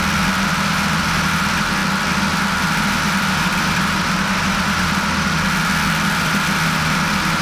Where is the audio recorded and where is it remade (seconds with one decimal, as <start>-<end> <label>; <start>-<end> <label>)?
0.0-7.4 recorded